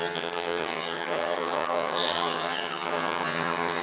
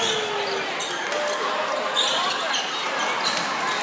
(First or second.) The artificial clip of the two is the first